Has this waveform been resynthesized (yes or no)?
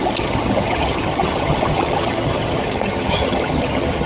yes